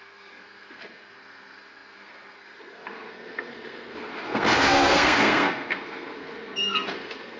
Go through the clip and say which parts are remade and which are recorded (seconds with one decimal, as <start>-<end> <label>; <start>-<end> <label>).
0.0-7.4 remade